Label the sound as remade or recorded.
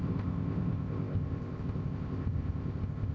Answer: remade